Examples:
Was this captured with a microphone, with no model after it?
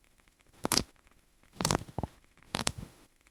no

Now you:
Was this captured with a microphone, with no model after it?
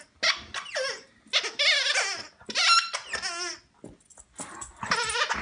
yes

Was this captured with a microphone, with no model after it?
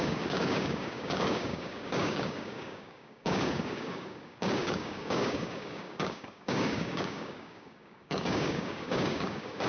no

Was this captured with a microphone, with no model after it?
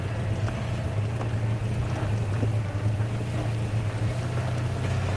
yes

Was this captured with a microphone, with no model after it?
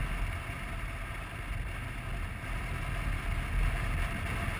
yes